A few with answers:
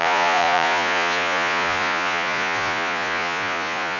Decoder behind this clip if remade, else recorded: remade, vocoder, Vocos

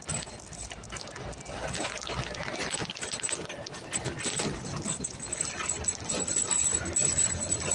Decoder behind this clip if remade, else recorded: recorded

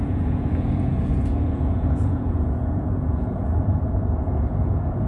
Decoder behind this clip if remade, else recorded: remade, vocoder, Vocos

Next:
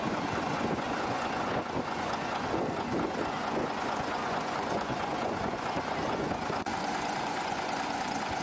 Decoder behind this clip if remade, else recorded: remade, vocoder, Vocos